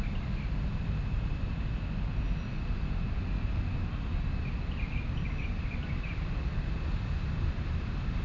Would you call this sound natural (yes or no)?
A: yes